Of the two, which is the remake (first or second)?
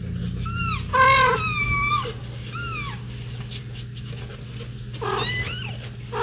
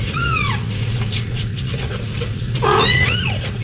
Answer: second